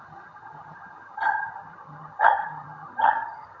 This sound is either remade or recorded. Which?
remade